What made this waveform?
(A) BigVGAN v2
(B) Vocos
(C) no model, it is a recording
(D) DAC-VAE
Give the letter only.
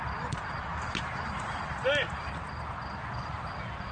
C